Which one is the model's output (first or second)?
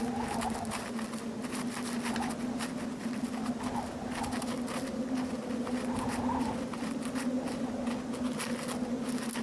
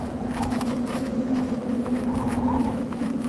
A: second